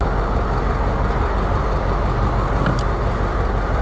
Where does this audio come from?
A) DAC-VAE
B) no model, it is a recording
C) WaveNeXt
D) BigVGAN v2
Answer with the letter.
B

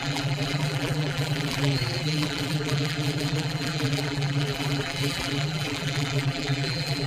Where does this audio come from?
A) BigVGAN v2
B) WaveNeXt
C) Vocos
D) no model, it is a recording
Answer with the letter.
A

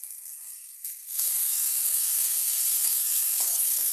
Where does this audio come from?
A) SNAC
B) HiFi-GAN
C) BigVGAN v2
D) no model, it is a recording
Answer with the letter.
A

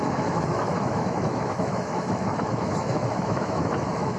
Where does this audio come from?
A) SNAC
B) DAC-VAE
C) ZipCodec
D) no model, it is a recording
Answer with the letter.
B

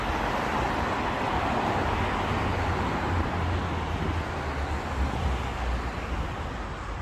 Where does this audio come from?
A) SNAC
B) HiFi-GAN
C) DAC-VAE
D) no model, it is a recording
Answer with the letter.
D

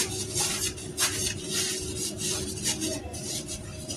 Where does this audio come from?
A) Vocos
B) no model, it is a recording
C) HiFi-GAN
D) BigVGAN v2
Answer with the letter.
D